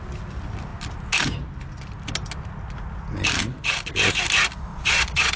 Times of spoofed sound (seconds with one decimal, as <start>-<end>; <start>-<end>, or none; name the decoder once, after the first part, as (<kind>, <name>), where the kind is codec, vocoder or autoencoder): 4.7-5.4 (vocoder, Vocos)